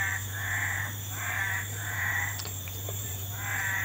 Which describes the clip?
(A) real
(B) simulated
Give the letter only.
B